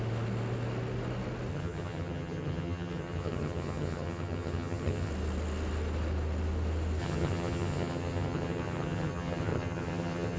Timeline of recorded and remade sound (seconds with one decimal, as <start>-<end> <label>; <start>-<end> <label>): 0.0-1.5 recorded; 1.5-5.1 remade; 5.1-7.0 recorded; 7.0-10.4 remade